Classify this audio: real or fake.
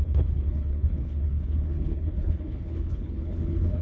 fake